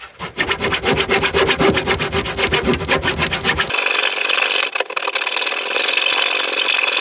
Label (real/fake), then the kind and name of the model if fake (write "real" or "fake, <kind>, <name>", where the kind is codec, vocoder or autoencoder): real